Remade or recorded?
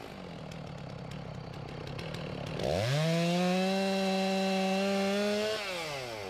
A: recorded